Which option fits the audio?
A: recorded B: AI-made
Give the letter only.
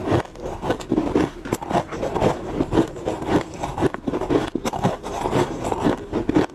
A